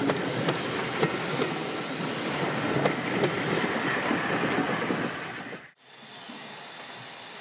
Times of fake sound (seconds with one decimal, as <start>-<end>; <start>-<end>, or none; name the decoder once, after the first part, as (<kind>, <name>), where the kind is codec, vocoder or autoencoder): none